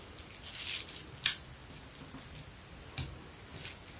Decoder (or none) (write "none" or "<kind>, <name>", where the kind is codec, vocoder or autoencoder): none